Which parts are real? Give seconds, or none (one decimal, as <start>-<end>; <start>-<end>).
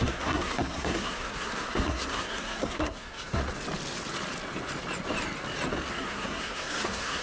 3.4-5.9